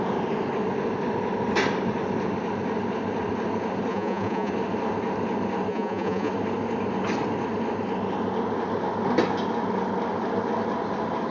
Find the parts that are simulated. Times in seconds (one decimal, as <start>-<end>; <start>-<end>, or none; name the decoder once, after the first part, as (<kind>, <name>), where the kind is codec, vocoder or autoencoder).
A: 3.9-4.5 (vocoder, Vocos); 5.7-6.3